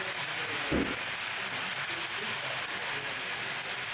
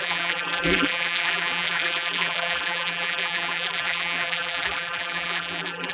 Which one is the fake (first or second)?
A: second